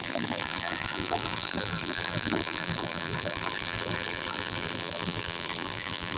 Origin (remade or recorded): remade